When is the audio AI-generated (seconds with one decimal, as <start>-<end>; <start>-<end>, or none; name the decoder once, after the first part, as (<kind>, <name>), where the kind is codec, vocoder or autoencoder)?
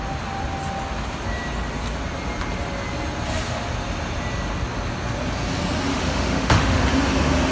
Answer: 5.9-6.8 (autoencoder, DAC-VAE)